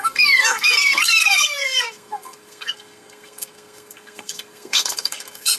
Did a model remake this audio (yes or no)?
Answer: yes